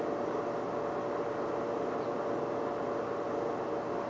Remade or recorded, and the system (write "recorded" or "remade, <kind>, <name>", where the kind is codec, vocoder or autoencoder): recorded